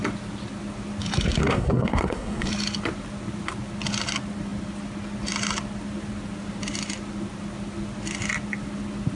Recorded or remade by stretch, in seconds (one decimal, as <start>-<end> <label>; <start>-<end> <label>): 0.0-1.4 recorded; 1.4-2.5 remade; 2.5-9.2 recorded